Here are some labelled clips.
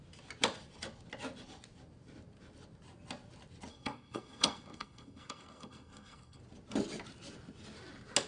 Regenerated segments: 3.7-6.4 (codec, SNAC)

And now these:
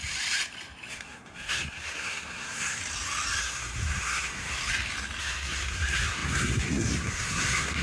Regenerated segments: 0.9-2.8 (codec, SNAC); 3.4-4.6; 5.2-7.8

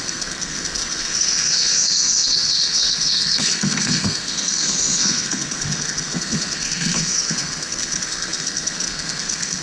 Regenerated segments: 0.0-9.6 (codec, SNAC)

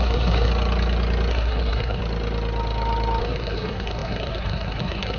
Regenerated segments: 0.0-0.5 (codec, SNAC); 1.3-2.0; 3.2-5.2